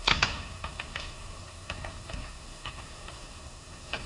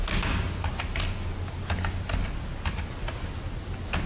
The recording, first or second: second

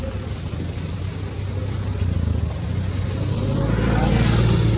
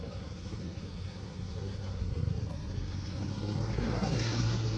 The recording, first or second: first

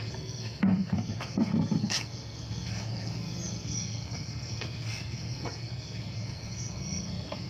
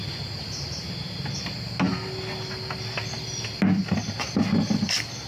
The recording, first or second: second